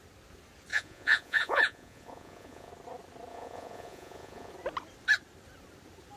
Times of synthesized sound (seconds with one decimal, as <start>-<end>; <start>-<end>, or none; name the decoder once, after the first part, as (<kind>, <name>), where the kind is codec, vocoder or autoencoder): 0.7-2.7 (vocoder, Vocos); 3.3-4.5